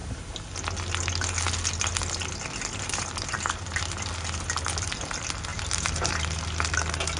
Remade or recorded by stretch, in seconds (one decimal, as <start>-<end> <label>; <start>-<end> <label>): 0.0-5.5 recorded; 5.5-6.2 remade; 6.2-7.2 recorded